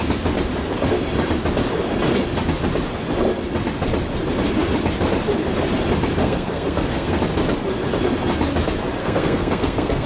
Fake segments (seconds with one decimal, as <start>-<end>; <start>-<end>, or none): 6.2-7.2; 9.0-10.1